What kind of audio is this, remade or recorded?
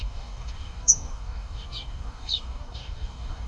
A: remade